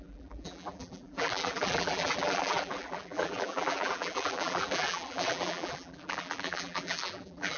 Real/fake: fake